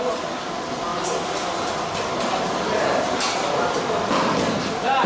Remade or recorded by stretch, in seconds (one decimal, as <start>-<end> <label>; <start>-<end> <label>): 0.0-5.1 recorded